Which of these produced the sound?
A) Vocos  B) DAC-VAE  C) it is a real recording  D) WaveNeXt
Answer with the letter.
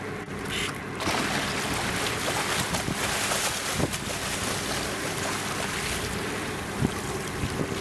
C